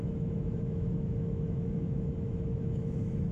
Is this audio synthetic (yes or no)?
yes